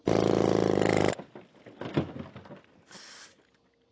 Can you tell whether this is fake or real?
real